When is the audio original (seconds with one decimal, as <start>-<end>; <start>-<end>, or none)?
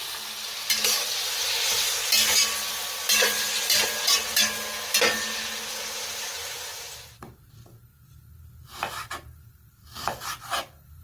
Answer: 0.0-6.7; 7.5-11.0